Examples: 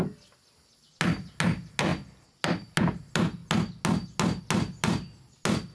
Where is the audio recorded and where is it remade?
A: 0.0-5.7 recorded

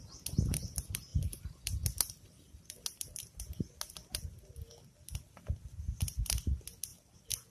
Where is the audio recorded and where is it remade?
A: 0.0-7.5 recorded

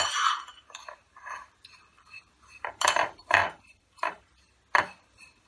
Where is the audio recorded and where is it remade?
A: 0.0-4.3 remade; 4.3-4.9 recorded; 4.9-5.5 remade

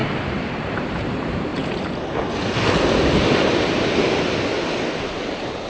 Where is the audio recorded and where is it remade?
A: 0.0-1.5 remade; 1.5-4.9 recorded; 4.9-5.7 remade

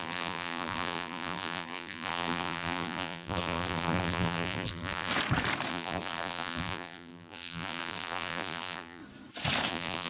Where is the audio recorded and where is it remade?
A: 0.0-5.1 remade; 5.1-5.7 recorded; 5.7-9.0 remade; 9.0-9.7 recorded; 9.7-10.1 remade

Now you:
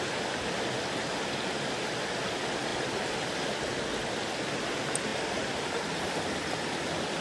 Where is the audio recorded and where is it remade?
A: 0.0-2.7 recorded; 2.7-3.7 remade; 3.7-5.1 recorded; 5.1-7.2 remade

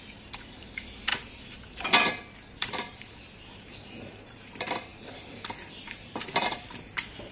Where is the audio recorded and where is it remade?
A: 0.0-1.1 remade; 1.1-2.5 recorded; 2.5-7.3 remade